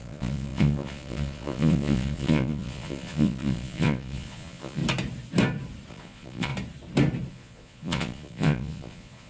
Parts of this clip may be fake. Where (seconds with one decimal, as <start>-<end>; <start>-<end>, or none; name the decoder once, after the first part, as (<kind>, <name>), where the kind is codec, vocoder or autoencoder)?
0.0-4.8 (vocoder, Vocos); 5.9-6.5; 7.3-9.3